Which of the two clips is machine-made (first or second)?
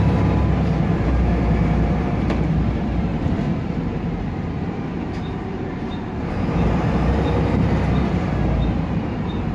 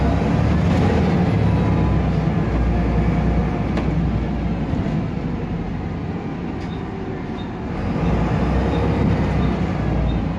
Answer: first